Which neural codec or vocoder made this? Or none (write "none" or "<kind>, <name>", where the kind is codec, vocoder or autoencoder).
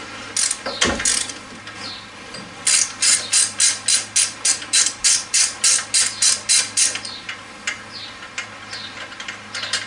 none